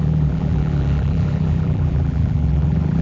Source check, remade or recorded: remade